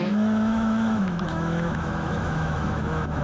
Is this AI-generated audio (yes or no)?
yes